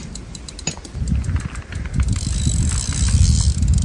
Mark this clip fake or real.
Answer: real